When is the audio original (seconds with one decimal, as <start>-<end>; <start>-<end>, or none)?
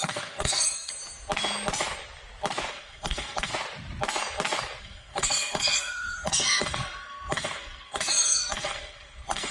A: 0.9-2.7; 3.5-4.8